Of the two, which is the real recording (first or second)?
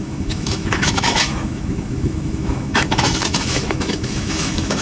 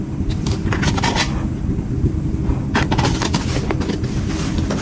second